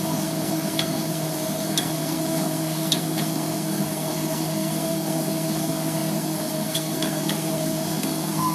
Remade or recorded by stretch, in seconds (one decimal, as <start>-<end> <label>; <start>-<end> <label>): 0.0-8.5 remade